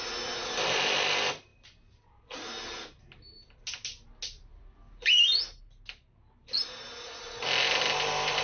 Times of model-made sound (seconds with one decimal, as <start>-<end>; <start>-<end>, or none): none